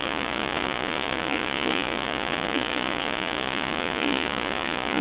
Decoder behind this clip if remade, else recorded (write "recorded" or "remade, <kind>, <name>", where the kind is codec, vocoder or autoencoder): remade, vocoder, Vocos